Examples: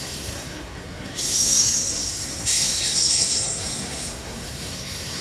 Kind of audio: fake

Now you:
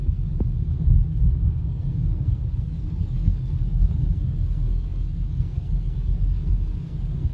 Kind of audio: fake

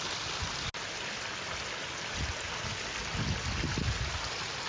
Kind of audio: real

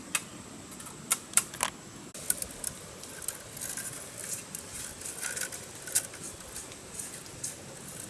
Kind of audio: real